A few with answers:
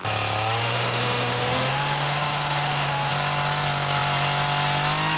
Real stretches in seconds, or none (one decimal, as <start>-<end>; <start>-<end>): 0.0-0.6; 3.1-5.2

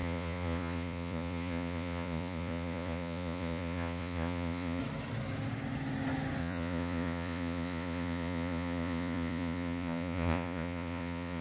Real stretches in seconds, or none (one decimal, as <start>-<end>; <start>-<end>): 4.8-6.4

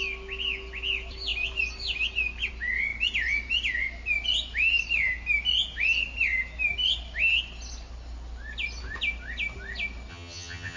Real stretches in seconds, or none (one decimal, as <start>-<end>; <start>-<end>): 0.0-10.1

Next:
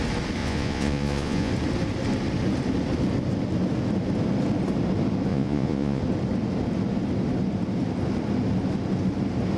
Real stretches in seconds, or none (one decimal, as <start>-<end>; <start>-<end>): 0.0-0.4; 1.5-5.3; 6.0-9.6